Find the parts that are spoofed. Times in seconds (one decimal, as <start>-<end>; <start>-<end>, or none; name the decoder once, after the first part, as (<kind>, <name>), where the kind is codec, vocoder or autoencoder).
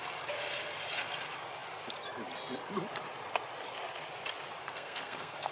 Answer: 4.6-5.5 (codec, SNAC)